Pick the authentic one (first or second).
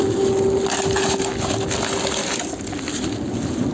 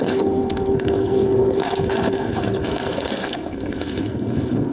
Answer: first